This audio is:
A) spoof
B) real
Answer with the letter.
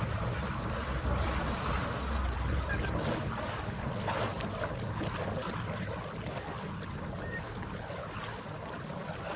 B